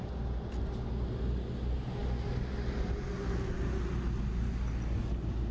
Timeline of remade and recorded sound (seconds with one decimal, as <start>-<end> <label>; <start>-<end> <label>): 0.0-5.5 recorded